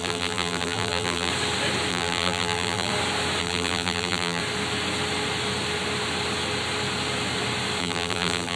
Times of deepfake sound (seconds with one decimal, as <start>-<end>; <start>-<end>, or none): 0.0-1.3; 1.9-2.9; 3.4-4.4; 7.8-8.6

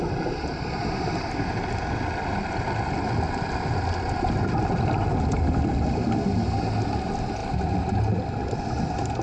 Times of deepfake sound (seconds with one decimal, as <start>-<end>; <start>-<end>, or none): 7.4-8.6